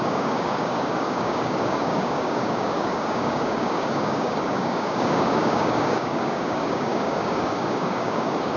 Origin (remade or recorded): remade